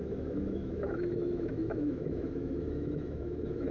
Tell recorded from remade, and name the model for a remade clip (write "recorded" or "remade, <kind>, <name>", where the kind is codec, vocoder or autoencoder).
remade, autoencoder, DAC-VAE